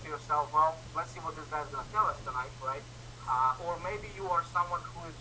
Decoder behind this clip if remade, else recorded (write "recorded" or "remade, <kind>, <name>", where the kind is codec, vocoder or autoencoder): recorded